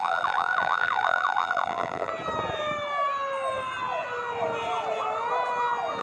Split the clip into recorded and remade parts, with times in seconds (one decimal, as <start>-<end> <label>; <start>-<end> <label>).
0.0-2.1 remade; 2.1-6.0 recorded